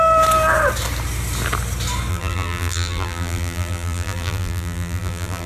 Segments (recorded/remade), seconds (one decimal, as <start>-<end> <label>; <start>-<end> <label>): 0.0-2.1 recorded; 2.1-5.5 remade